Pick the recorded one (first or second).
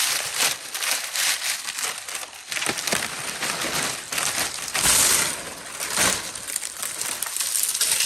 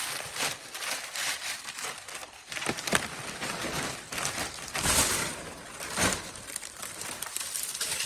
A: first